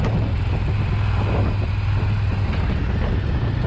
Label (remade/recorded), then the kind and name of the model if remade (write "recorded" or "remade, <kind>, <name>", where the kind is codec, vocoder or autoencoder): recorded